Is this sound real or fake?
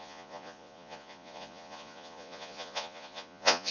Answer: fake